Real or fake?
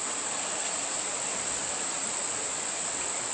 real